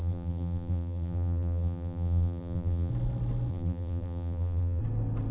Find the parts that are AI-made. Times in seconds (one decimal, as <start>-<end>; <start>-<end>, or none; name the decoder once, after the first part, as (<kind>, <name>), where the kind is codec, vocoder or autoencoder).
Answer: 0.0-2.9 (vocoder, BigVGAN v2); 3.5-4.8